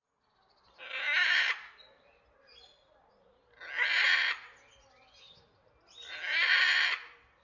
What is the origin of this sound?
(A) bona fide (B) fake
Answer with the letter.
A